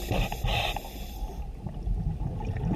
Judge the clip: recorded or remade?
recorded